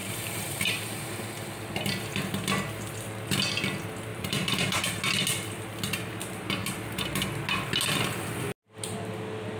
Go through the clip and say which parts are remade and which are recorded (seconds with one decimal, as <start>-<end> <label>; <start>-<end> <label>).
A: 0.0-1.3 remade; 1.3-4.1 recorded; 4.1-4.8 remade; 4.8-9.6 recorded